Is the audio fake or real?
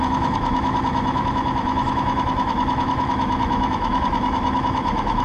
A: fake